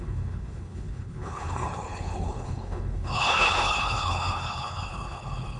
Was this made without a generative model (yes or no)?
no